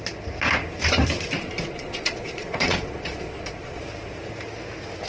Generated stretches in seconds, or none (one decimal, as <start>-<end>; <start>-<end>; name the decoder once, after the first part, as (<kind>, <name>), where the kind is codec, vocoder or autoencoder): 1.4-3.8 (vocoder, Vocos)